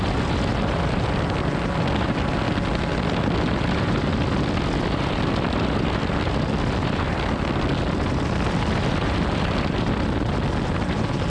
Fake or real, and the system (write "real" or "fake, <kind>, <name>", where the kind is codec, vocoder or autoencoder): real